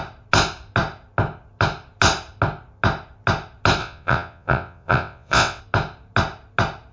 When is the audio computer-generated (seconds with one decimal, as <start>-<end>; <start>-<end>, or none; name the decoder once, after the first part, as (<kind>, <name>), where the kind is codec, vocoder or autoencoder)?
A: 3.8-5.6 (vocoder, WaveNeXt)